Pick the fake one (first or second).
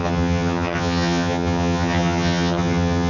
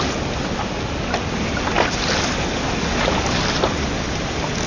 first